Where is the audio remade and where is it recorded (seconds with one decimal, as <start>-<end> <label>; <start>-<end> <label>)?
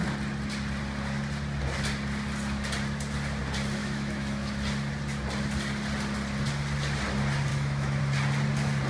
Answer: 0.0-3.8 recorded; 3.8-4.5 remade; 4.5-7.5 recorded; 7.5-8.0 remade; 8.0-8.9 recorded